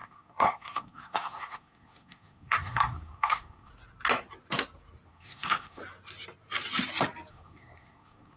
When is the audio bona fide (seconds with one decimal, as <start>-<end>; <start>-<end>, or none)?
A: 3.7-5.1; 5.8-7.3